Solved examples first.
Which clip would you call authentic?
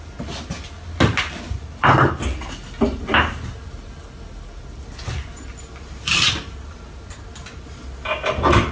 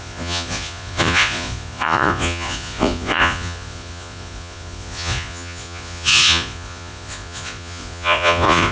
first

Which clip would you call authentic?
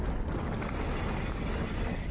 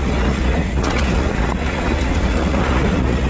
first